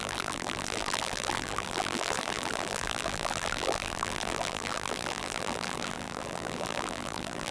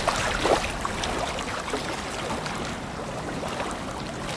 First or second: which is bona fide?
second